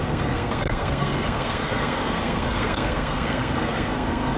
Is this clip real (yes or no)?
no